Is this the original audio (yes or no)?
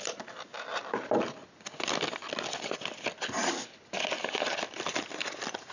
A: yes